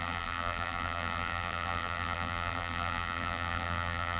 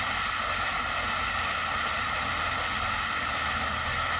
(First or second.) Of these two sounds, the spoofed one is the first